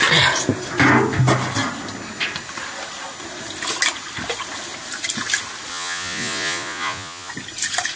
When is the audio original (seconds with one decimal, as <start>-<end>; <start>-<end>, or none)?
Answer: 0.0-5.7; 7.3-8.0